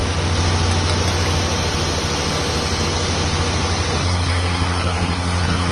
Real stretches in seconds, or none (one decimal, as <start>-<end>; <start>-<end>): 0.0-4.0

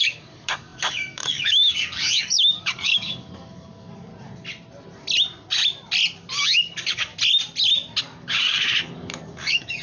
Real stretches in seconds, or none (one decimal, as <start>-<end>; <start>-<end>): 4.1-6.4; 7.1-8.0

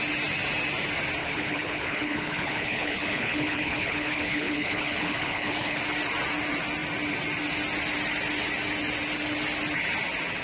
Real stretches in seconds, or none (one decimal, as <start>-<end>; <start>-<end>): 0.0-1.2; 5.8-10.4

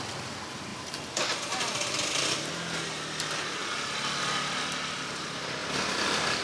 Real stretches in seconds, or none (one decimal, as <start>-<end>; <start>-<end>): 0.0-5.6

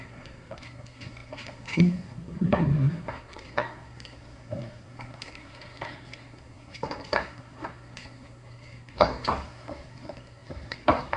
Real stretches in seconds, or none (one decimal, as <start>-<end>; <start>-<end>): none

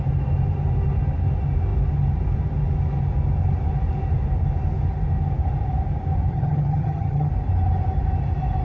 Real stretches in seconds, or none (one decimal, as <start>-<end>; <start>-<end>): 0.0-6.3; 7.3-8.6

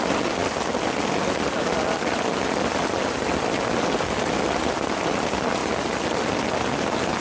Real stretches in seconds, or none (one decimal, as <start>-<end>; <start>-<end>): 0.0-7.2

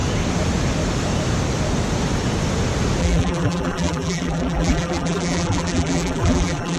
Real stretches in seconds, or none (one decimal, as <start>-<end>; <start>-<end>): 0.0-3.0